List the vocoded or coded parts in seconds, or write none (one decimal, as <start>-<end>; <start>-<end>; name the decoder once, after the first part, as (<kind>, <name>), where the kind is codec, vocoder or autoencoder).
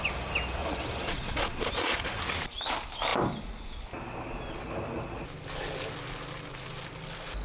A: 0.6-2.2 (vocoder, Vocos)